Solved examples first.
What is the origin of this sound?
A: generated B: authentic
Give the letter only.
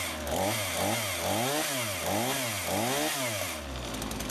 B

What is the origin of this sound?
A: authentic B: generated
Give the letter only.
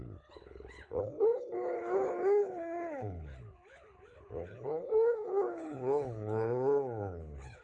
B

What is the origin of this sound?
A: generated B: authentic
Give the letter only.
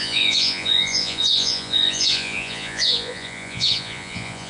A